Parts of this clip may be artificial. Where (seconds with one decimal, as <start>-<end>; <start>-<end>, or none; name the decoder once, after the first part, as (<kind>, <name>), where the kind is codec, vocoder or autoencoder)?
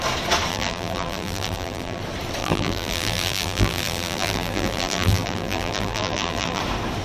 0.5-2.0 (vocoder, BigVGAN v2); 2.4-6.6